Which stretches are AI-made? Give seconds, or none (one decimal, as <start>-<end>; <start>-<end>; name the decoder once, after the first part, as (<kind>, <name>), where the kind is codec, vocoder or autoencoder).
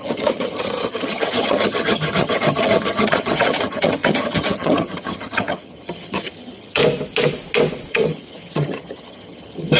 0.0-6.8 (vocoder, HiFi-GAN); 7.9-9.8